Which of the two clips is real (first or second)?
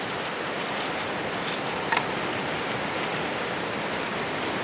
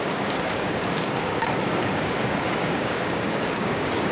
first